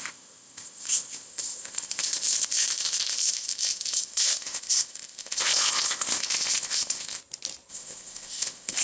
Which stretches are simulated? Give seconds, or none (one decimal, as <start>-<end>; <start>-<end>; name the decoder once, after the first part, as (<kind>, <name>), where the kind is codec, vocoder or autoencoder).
0.0-7.2 (codec, ZipCodec); 7.7-8.8